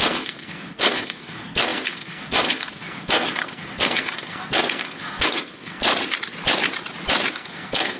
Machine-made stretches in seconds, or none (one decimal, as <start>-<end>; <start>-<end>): 0.0-5.9; 7.3-8.0